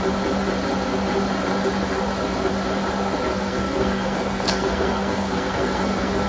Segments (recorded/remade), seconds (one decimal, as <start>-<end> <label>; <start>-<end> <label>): 0.0-3.3 recorded; 3.3-6.3 remade